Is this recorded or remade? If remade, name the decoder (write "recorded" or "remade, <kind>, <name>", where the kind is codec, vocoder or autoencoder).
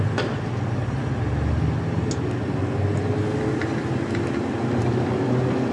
recorded